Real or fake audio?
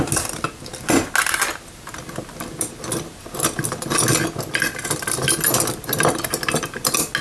real